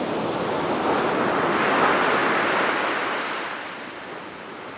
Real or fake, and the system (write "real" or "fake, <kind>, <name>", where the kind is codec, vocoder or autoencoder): real